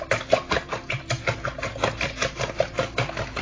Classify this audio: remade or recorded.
recorded